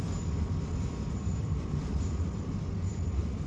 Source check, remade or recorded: recorded